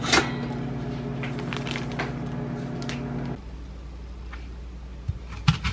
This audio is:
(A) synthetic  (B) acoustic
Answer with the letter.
B